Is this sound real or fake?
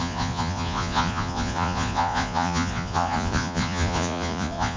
fake